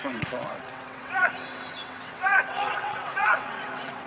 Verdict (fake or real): fake